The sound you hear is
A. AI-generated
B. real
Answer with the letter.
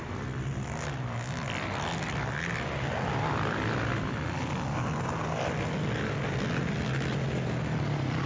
B